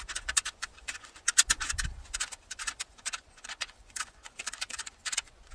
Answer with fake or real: fake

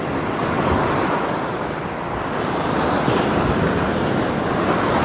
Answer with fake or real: real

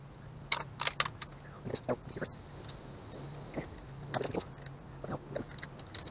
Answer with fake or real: real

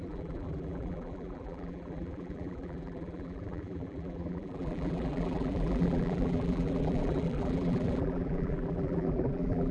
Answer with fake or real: fake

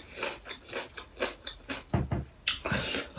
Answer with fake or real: real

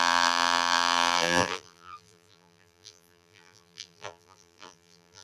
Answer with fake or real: fake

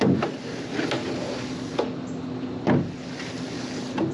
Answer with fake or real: real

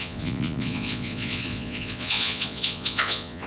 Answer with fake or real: fake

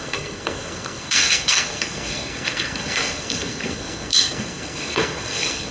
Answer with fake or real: fake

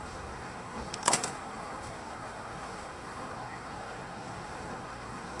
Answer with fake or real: fake